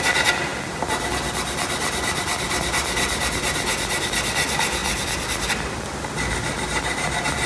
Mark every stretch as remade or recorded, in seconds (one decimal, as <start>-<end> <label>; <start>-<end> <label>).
0.0-7.5 recorded